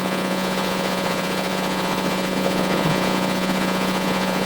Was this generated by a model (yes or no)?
yes